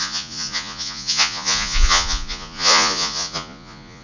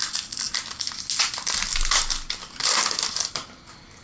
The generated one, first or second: first